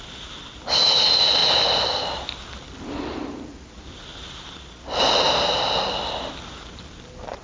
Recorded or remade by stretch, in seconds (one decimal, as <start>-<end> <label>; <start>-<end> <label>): 0.0-7.4 recorded